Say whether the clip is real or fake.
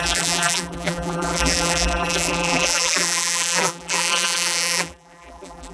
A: fake